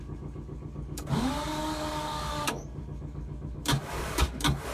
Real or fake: fake